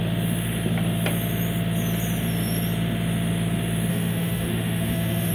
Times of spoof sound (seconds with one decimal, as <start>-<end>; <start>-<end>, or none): 3.9-5.3